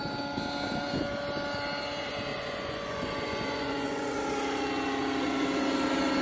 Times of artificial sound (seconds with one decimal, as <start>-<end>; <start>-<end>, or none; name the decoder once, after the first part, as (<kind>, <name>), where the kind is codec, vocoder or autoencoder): 2.3-4.2 (vocoder, Vocos)